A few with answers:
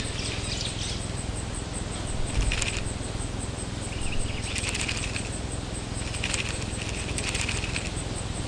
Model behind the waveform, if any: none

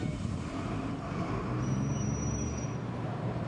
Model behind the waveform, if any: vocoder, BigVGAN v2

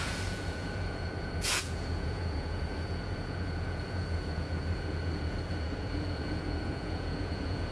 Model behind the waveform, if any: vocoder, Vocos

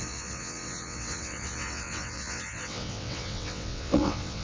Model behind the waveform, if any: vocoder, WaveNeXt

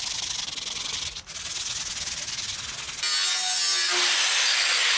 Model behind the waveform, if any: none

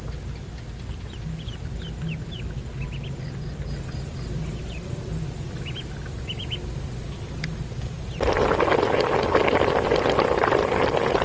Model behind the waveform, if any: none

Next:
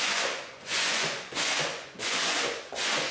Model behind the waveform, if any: vocoder, Vocos